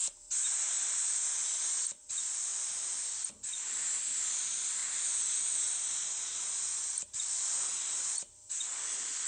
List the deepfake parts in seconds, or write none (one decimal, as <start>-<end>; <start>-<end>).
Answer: none